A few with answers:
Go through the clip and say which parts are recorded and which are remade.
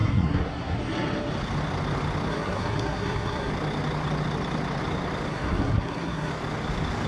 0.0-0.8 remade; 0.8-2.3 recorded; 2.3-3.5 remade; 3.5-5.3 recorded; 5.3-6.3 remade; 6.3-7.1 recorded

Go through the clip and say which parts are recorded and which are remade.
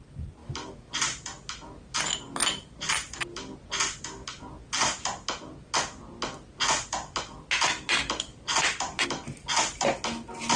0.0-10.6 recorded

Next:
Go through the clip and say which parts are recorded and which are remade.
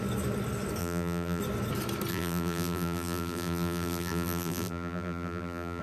0.0-0.8 recorded; 0.8-1.4 remade; 1.4-2.1 recorded; 2.1-5.8 remade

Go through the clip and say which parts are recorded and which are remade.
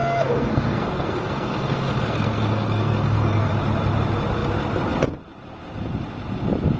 0.0-3.5 remade; 3.5-6.8 recorded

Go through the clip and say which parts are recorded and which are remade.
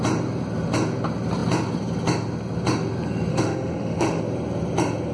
0.0-3.3 recorded; 3.3-4.2 remade; 4.2-5.1 recorded